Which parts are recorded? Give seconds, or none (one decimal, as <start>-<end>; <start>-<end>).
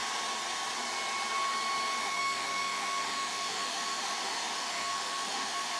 0.0-2.0